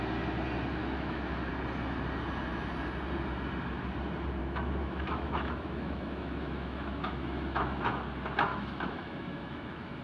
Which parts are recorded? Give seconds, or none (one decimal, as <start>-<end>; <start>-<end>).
0.0-0.8; 1.5-4.4; 8.0-8.5